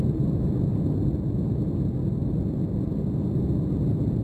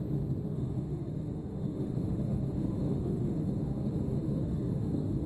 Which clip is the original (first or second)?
first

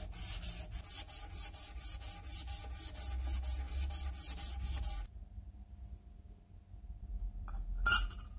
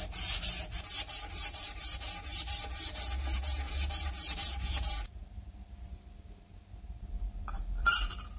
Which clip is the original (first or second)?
first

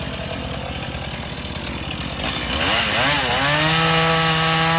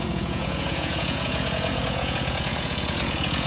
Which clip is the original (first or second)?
first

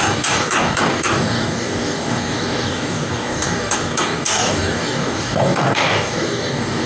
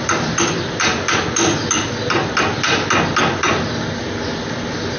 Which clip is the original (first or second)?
second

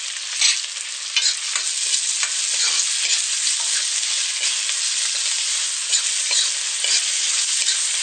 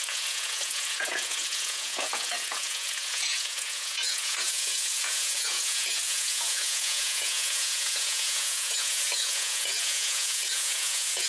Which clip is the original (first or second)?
first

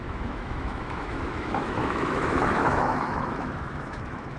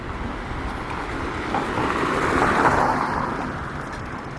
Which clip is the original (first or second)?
second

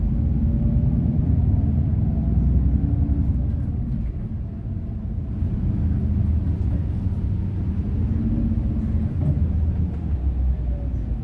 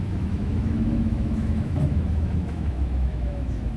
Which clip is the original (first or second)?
first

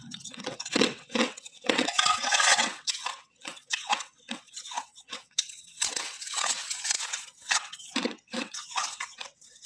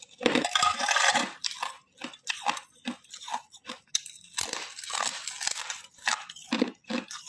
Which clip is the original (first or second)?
second